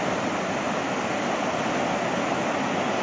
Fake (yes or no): no